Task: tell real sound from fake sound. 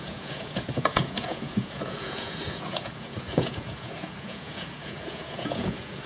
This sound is fake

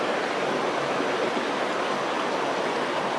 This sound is real